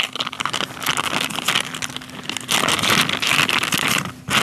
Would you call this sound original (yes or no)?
yes